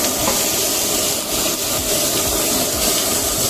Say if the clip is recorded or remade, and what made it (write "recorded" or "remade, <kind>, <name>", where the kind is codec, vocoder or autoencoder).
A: recorded